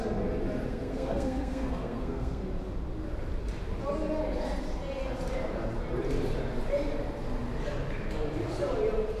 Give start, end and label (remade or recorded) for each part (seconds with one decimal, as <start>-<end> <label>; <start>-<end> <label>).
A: 0.0-0.7 recorded; 0.7-2.5 remade; 2.5-9.2 recorded